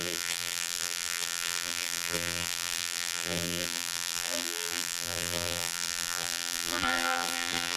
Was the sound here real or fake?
fake